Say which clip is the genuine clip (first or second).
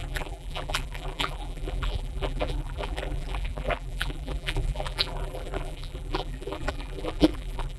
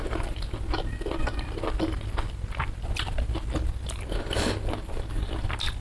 second